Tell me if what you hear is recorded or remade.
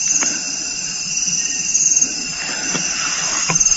recorded